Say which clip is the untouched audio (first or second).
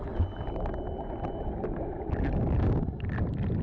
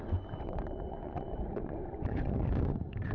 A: first